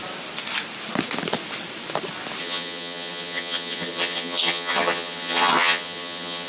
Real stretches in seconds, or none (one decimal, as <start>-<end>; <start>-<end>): 0.0-2.4

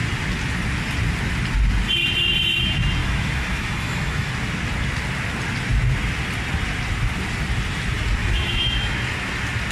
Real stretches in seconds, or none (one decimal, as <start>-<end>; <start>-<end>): 0.0-3.0; 4.3-8.2; 8.9-9.7

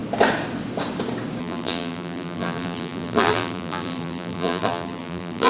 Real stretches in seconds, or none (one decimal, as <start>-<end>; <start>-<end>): 0.0-1.4

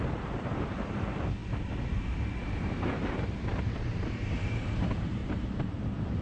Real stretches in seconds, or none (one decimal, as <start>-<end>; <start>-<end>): 1.4-1.9

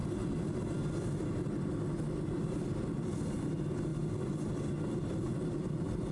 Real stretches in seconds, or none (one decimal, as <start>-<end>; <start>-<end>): 0.0-6.1